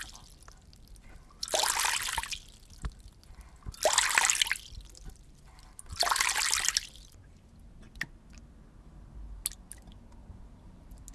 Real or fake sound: real